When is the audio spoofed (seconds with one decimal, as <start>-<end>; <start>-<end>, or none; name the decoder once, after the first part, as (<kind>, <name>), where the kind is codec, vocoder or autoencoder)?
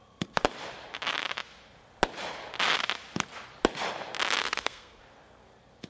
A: 4.4-5.0 (codec, SNAC)